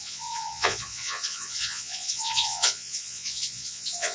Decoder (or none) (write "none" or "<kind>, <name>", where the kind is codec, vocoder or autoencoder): vocoder, Vocos